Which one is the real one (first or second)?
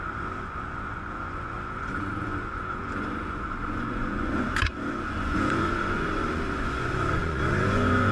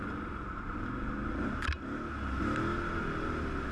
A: second